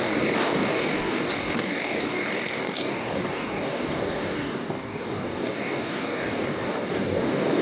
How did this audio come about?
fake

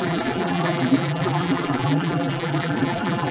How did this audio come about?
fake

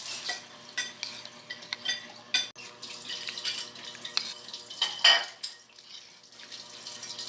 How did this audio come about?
real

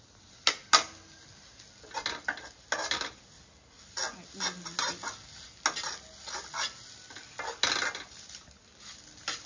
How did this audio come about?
real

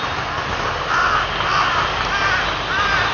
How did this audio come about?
real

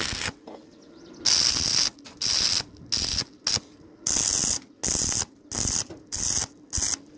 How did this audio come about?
real